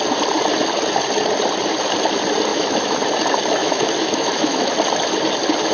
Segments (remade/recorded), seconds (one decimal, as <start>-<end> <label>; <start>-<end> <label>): 0.0-2.5 recorded; 2.5-3.0 remade; 3.0-3.6 recorded; 3.6-4.7 remade; 4.7-5.7 recorded